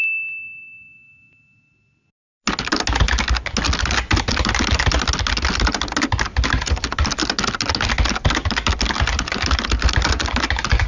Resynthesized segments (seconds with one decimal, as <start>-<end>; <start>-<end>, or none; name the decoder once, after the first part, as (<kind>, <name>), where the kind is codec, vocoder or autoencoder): none